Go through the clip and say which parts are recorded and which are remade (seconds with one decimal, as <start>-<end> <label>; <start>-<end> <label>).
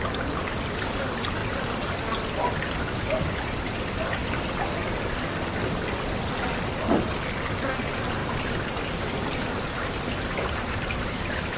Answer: 0.0-11.6 recorded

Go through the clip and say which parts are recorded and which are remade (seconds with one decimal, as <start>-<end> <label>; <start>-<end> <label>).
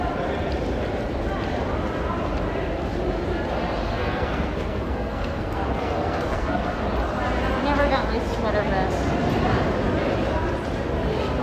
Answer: 0.0-3.9 recorded; 3.9-6.8 remade; 6.8-11.4 recorded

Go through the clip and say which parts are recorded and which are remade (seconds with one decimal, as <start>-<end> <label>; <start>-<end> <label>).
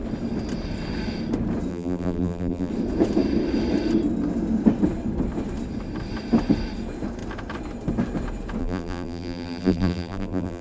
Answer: 0.0-1.7 recorded; 1.7-2.7 remade; 2.7-8.6 recorded; 8.6-10.6 remade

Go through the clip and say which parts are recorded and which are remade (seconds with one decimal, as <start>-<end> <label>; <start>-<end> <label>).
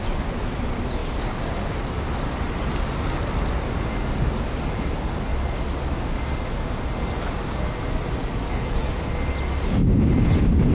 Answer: 0.0-8.2 recorded; 8.2-9.0 remade; 9.0-10.7 recorded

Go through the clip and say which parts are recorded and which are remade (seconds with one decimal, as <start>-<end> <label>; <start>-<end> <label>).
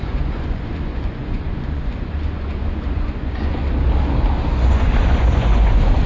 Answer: 0.0-3.6 remade; 3.6-4.6 recorded; 4.6-6.1 remade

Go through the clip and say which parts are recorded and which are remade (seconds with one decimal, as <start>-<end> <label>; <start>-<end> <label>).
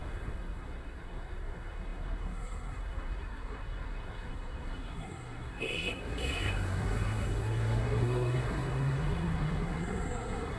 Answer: 0.0-10.6 remade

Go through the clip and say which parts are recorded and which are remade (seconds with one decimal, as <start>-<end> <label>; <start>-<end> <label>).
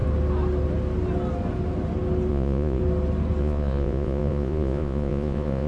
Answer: 0.0-2.3 recorded; 2.3-2.8 remade; 2.8-3.4 recorded; 3.4-5.7 remade